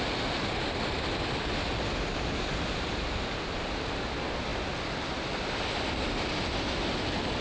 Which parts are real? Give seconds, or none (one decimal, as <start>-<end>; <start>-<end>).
0.0-7.4